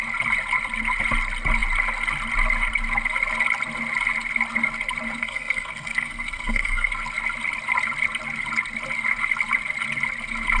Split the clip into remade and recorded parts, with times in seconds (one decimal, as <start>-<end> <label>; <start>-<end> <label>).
0.0-5.2 recorded; 5.2-6.9 remade; 6.9-10.6 recorded